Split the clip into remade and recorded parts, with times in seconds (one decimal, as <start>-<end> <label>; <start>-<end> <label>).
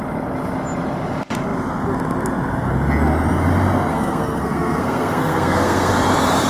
0.0-3.9 recorded; 3.9-5.9 remade; 5.9-6.5 recorded